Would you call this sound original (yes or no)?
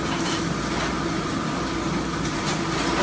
yes